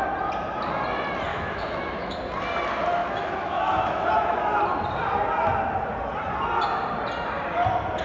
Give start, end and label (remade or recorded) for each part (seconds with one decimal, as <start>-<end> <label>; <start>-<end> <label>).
0.0-1.3 recorded; 1.3-2.2 remade; 2.2-3.0 recorded; 3.0-4.6 remade; 4.6-8.0 recorded